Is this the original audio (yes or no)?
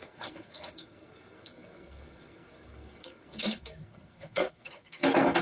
no